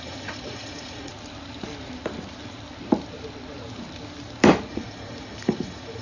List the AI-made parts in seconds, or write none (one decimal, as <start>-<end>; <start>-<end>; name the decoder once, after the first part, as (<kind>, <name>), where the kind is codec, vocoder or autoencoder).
0.0-1.1 (vocoder, Vocos); 4.7-6.0